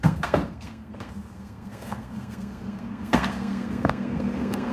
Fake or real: fake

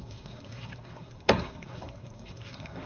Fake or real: fake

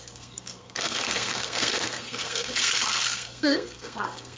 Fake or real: fake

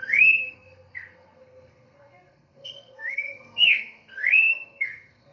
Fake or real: fake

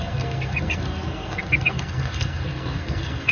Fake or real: fake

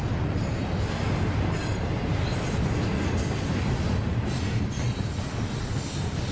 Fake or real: real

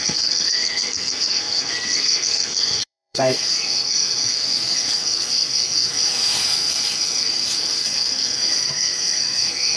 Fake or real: fake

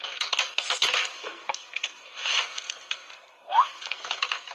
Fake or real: fake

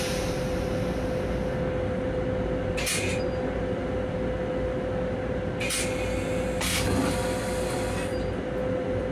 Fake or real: real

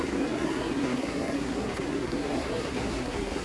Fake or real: fake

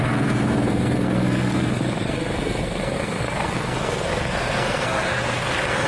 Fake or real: fake